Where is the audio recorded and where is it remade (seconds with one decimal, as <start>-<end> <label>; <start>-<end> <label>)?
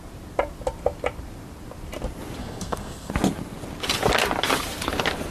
0.0-2.4 recorded; 2.4-3.1 remade; 3.1-5.3 recorded